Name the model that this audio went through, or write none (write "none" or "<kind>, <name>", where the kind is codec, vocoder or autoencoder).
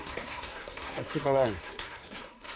codec, SNAC